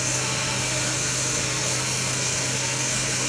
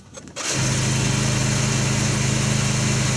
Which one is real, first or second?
second